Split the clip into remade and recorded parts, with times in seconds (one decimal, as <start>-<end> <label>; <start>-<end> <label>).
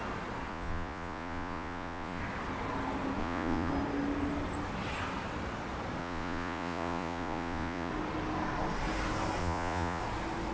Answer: 0.0-0.5 recorded; 0.5-2.2 remade; 2.2-3.2 recorded; 3.2-3.7 remade; 3.7-6.0 recorded; 6.0-7.9 remade; 7.9-9.4 recorded; 9.4-10.0 remade; 10.0-10.5 recorded